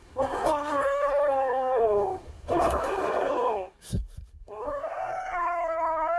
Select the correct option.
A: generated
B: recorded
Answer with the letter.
A